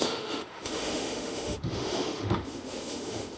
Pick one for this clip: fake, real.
fake